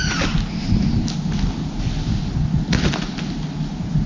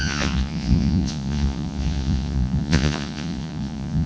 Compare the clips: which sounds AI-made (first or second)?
second